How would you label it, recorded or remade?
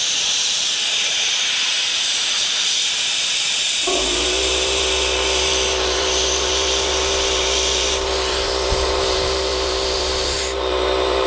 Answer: remade